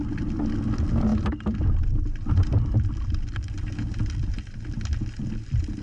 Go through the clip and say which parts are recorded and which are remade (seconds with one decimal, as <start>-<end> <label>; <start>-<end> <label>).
0.0-1.1 recorded; 1.1-4.6 remade; 4.6-5.8 recorded